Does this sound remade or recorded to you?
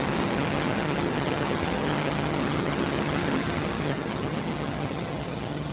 remade